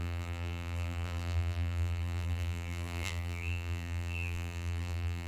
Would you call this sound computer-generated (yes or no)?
yes